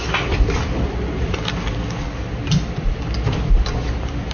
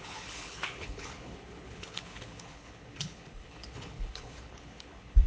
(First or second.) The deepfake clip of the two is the second